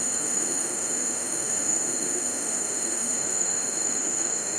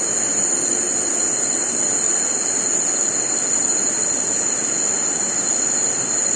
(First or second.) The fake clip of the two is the first